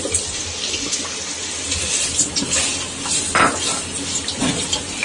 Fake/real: real